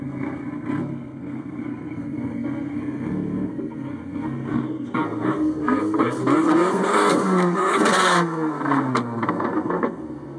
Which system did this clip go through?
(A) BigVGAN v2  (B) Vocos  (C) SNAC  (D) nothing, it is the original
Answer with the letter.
C